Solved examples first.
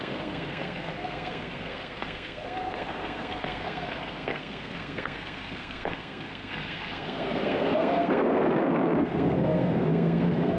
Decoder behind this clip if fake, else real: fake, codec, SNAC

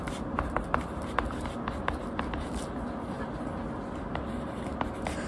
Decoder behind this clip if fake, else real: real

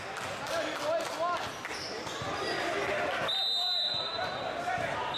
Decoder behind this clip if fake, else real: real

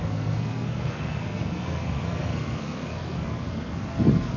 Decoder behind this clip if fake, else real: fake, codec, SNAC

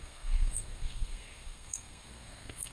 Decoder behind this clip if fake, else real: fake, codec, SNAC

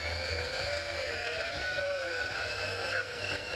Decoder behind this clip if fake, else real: fake, codec, SNAC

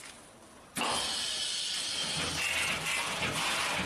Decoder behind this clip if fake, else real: real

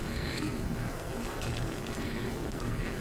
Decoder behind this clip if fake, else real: fake, codec, SNAC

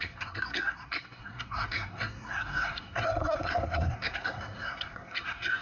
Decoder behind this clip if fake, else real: fake, codec, SNAC